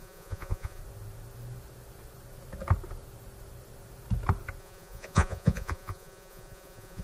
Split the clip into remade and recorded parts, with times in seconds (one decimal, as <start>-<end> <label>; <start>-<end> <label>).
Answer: 0.0-0.8 remade; 0.8-4.6 recorded; 4.6-7.0 remade